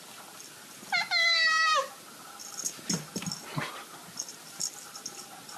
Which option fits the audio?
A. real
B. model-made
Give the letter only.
A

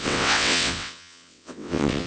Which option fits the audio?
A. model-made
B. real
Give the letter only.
A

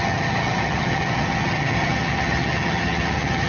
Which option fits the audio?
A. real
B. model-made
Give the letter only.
B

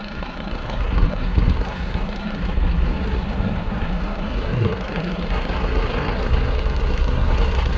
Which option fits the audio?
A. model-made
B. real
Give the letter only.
A